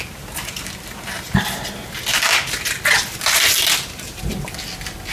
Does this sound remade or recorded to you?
recorded